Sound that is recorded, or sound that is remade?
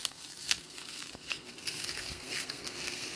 remade